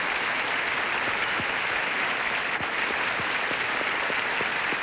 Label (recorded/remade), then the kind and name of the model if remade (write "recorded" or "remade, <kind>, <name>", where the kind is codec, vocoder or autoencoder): recorded